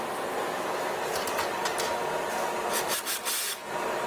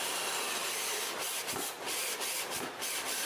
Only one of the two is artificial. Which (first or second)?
second